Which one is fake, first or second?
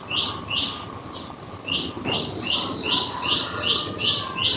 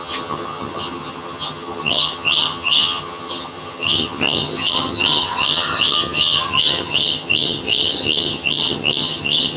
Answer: second